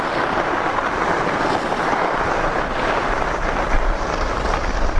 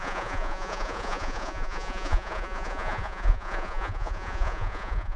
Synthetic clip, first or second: second